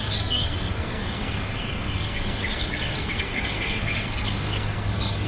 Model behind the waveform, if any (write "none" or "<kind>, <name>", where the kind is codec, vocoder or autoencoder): codec, SNAC